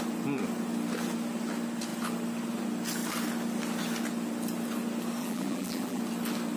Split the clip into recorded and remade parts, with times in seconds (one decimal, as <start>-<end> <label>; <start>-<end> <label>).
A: 0.0-5.2 recorded; 5.2-6.0 remade; 6.0-6.6 recorded